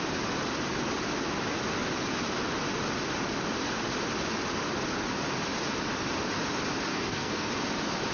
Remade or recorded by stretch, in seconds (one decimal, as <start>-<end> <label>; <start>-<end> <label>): 0.0-6.9 recorded; 6.9-7.5 remade; 7.5-8.1 recorded